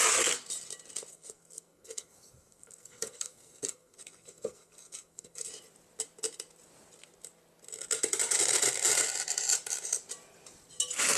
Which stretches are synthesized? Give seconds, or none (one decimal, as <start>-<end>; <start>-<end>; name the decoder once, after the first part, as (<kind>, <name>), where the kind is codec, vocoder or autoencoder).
1.1-5.5 (codec, SNAC)